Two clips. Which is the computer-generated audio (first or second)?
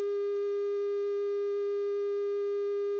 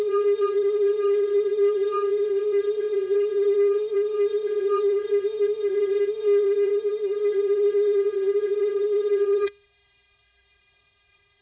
second